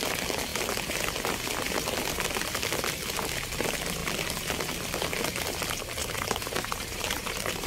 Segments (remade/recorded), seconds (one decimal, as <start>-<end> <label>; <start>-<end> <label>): 0.0-6.0 recorded; 6.0-7.7 remade